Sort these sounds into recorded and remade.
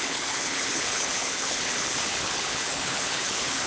remade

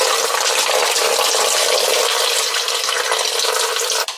recorded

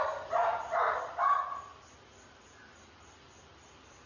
remade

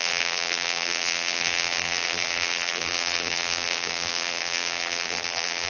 remade